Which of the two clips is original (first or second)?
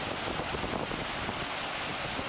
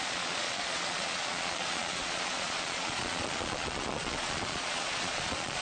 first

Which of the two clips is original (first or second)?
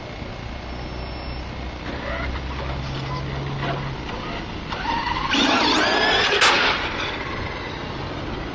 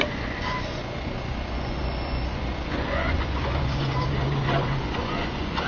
first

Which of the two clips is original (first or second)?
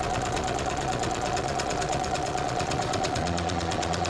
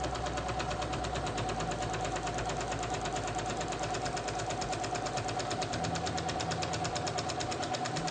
second